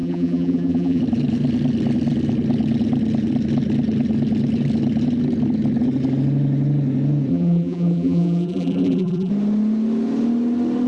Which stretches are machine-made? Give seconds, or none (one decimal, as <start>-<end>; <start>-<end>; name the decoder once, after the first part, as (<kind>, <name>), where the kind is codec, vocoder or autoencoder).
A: 0.0-1.0 (vocoder, BigVGAN v2); 7.3-9.3